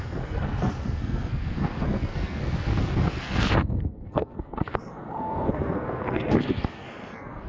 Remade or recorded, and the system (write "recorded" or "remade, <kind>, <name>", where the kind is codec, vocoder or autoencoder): remade, codec, SNAC